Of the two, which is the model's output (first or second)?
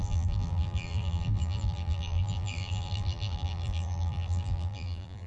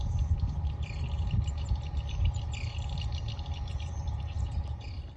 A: first